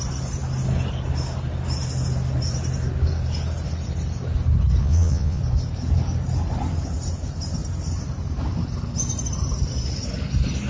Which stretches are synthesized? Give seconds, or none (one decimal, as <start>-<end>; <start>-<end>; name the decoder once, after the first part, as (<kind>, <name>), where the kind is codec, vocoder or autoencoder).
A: 4.8-5.4 (vocoder, Vocos)